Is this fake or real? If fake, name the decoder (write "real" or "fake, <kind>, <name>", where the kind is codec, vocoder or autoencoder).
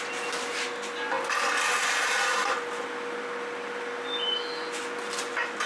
real